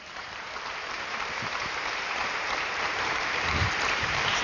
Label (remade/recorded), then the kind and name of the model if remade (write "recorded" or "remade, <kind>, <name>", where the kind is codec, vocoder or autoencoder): remade, vocoder, BigVGAN v2